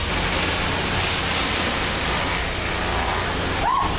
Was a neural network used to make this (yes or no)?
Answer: no